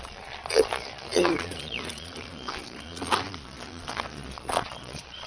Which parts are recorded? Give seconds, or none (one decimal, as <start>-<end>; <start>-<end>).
none

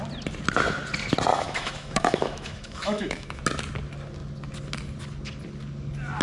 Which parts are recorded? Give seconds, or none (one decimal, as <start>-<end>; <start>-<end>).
0.0-1.3; 3.4-6.2